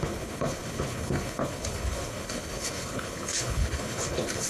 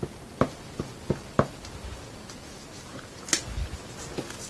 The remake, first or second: first